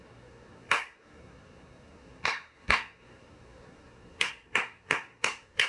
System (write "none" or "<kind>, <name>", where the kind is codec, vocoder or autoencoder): codec, SNAC